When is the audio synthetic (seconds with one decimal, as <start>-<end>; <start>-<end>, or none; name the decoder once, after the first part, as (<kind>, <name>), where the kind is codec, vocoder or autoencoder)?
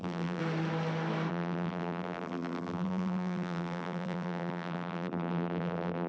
0.0-0.4 (vocoder, BigVGAN v2); 1.3-6.1